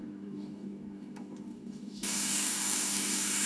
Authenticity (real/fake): fake